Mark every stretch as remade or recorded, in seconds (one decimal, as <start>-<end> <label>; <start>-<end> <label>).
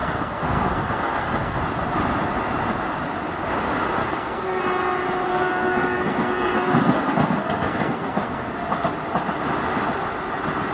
0.0-1.6 remade; 1.6-4.0 recorded; 4.0-4.6 remade; 4.6-5.3 recorded; 5.3-8.5 remade; 8.5-10.7 recorded